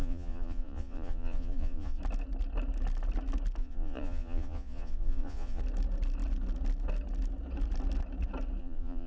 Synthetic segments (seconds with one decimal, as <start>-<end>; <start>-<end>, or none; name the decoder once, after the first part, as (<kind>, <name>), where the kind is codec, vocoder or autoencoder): 0.0-2.0 (vocoder, Vocos); 3.6-5.6; 8.6-9.1